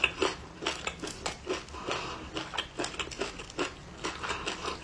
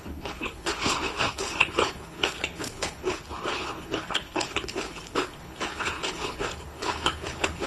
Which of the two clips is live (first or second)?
first